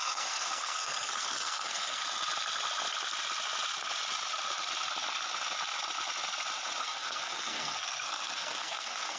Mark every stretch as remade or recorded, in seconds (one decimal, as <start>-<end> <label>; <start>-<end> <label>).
0.0-2.0 remade; 2.0-6.8 recorded; 6.8-9.2 remade